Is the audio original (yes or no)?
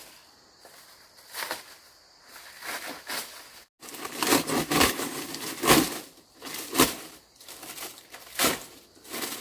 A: yes